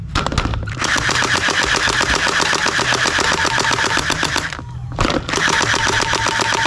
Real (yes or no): yes